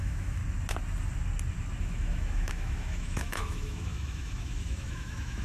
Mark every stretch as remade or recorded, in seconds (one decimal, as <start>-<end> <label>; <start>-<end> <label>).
0.0-0.4 remade; 0.4-1.8 recorded; 1.8-5.4 remade

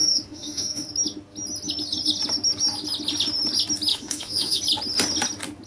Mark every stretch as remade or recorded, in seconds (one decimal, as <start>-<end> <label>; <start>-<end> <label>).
0.0-0.9 remade; 0.9-3.9 recorded; 3.9-4.6 remade; 4.6-5.7 recorded

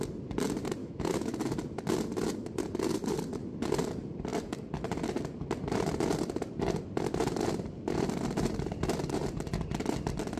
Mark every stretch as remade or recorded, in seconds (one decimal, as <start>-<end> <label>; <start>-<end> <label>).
0.0-0.8 recorded; 0.8-1.4 remade; 1.4-10.4 recorded

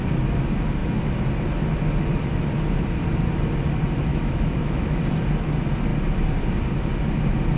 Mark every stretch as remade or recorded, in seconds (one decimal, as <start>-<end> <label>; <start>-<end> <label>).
0.0-4.1 recorded; 4.1-5.0 remade; 5.0-7.6 recorded

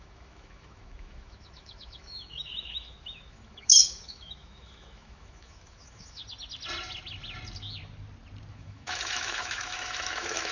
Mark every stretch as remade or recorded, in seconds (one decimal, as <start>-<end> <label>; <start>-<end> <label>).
0.0-6.2 remade; 6.2-8.5 recorded; 8.5-10.5 remade

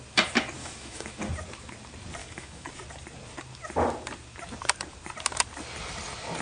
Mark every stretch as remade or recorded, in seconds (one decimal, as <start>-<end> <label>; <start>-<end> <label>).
0.0-0.6 recorded; 0.6-1.2 remade; 1.2-2.2 recorded; 2.2-2.7 remade; 2.7-6.4 recorded

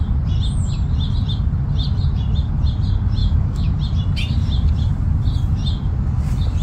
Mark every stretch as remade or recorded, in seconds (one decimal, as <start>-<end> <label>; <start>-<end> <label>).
0.0-3.2 recorded; 3.2-3.8 remade; 3.8-6.6 recorded